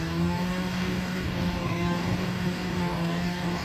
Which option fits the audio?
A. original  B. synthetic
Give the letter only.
B